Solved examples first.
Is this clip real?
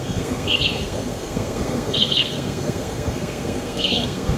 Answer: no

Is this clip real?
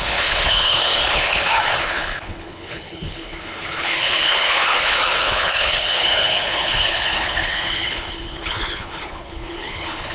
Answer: no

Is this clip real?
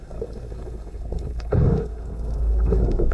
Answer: no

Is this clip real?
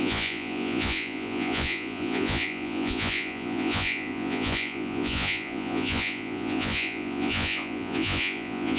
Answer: no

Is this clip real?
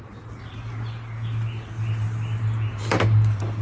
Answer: yes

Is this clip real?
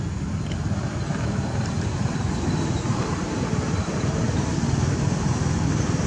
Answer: yes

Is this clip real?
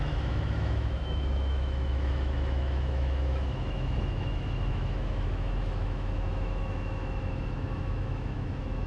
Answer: no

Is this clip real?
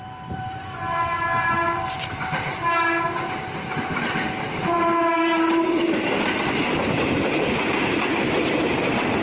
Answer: no